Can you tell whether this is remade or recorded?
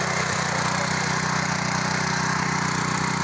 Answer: recorded